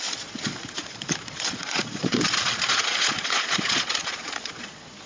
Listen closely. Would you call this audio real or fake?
fake